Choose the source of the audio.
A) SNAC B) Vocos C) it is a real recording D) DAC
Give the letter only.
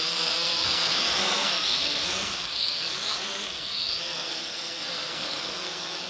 A